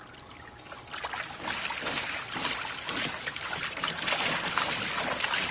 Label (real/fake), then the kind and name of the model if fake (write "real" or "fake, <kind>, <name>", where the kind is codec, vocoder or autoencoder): real